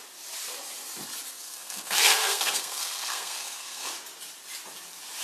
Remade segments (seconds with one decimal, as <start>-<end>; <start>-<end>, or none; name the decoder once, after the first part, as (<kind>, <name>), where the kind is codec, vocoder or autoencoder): 1.3-3.9 (codec, SNAC)